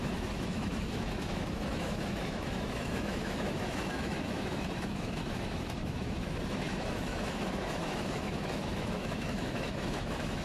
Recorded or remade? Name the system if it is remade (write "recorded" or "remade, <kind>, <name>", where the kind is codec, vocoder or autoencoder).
remade, autoencoder, DAC-VAE